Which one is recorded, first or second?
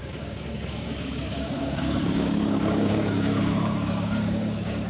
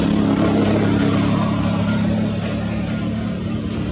second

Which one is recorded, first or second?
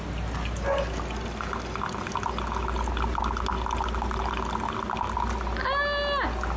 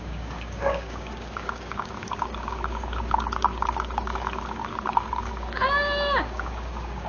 first